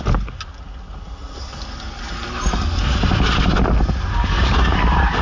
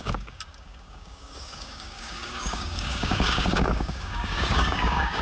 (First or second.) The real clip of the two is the first